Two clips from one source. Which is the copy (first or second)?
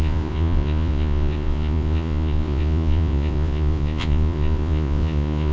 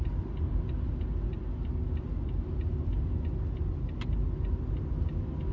first